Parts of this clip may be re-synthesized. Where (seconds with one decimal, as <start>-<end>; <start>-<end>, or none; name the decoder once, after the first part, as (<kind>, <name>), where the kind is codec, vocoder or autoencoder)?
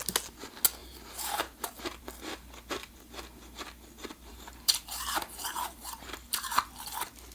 0.8-2.0 (vocoder, BigVGAN v2); 4.3-6.6